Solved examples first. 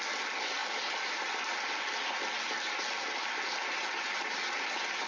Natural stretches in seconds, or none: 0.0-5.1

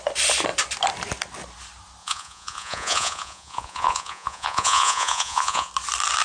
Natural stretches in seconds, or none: 0.0-2.0; 5.7-6.2

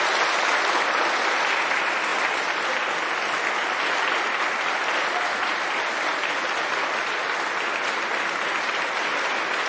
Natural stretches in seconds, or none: 0.0-9.7